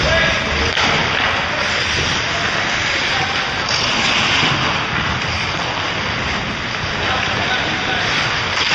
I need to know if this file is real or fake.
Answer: real